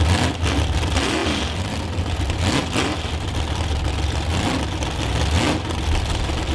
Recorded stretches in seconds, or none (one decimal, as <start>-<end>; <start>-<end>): 0.0-6.5